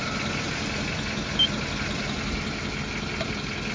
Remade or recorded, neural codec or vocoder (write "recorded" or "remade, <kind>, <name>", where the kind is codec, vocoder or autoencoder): recorded